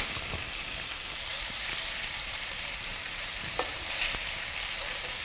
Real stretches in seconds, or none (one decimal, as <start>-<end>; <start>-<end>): 0.0-1.3; 4.4-5.2